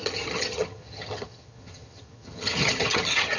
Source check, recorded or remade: remade